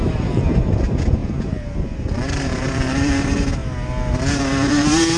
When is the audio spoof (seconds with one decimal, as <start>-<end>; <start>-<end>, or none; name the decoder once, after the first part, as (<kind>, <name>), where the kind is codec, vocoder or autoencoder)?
0.0-3.6 (vocoder, BigVGAN v2); 4.3-5.2